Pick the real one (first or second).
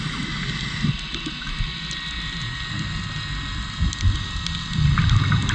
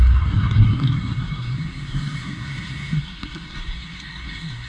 first